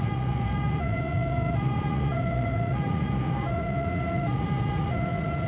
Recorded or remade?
remade